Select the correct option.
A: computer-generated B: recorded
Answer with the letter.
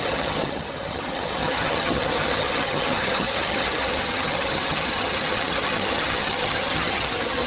A